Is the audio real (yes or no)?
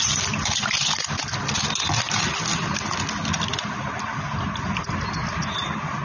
yes